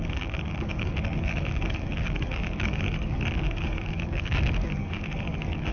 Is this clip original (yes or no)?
no